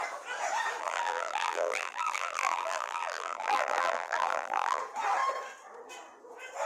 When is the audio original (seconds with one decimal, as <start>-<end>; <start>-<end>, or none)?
0.0-0.8; 4.8-6.7